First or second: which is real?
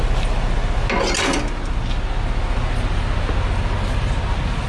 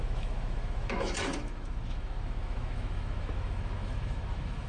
first